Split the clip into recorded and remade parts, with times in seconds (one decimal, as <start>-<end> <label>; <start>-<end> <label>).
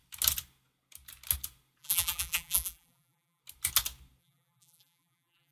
0.0-1.8 recorded; 1.8-3.4 remade; 3.4-4.2 recorded; 4.2-5.5 remade